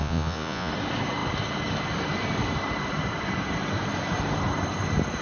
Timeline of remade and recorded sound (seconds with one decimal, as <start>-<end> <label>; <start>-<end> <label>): 0.0-0.7 remade; 0.7-5.2 recorded